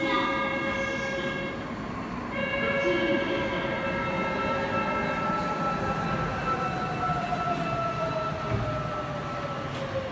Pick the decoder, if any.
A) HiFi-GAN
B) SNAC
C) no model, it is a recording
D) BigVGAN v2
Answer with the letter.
C